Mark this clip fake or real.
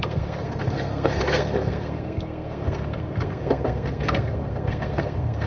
fake